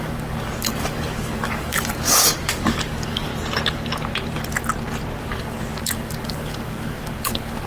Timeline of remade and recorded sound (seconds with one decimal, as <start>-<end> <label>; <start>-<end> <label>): 0.0-3.3 remade; 3.3-5.2 recorded; 5.2-7.7 remade